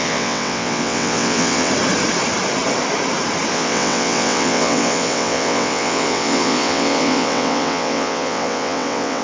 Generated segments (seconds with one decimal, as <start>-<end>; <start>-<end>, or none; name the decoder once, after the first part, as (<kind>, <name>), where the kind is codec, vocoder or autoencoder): 0.0-1.7 (vocoder, WaveNeXt); 3.5-9.2